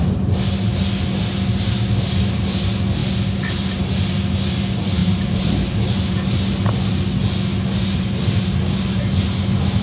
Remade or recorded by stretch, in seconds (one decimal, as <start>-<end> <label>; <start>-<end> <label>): 0.0-5.0 recorded; 5.0-6.2 remade; 6.2-9.8 recorded